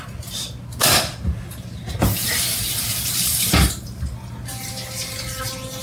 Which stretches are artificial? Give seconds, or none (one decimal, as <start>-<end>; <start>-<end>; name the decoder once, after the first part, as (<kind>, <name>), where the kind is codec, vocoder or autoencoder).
0.8-4.0 (vocoder, BigVGAN v2)